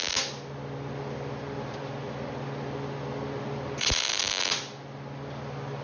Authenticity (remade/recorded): recorded